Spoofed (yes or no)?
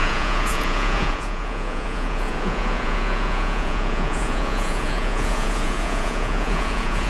yes